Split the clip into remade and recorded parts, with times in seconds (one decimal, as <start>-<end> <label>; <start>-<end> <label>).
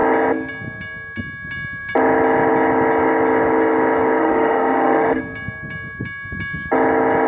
0.0-4.2 recorded; 4.2-5.2 remade; 5.2-7.3 recorded